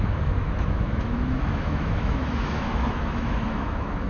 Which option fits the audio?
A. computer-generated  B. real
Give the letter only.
A